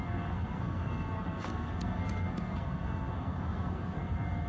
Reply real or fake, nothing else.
fake